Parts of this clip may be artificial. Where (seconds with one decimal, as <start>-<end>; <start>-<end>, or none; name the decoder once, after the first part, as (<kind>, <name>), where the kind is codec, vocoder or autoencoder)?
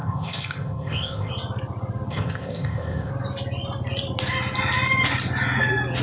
0.0-1.3 (codec, ZipCodec); 2.1-3.1